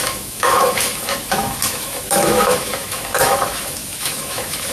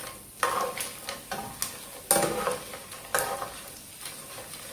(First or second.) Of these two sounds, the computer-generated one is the first